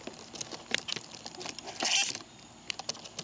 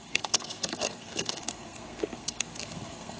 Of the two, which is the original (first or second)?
first